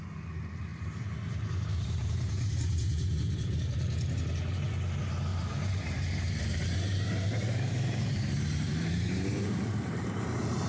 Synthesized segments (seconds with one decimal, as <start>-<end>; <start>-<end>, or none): 0.7-4.2; 5.3-10.7